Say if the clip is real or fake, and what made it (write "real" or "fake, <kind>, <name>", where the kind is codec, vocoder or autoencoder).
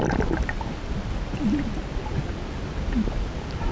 real